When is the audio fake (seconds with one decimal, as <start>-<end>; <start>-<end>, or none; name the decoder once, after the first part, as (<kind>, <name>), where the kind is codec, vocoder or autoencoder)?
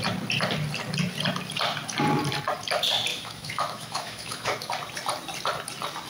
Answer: 3.1-4.7 (autoencoder, DAC-VAE)